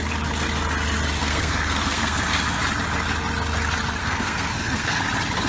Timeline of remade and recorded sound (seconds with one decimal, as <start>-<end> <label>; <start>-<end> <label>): 0.0-1.2 recorded; 1.2-2.6 remade; 2.6-4.0 recorded; 4.0-5.0 remade; 5.0-5.5 recorded